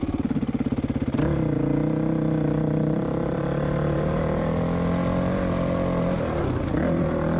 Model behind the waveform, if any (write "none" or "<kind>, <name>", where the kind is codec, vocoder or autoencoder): none